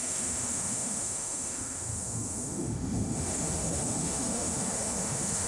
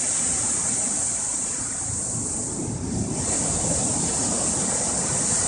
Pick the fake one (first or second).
first